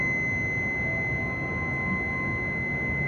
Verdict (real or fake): real